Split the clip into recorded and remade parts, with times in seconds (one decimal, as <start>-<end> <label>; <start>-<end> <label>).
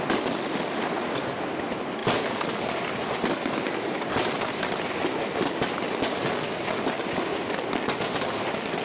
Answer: 0.0-8.8 recorded